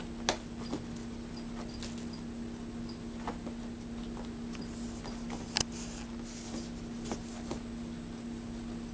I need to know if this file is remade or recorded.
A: recorded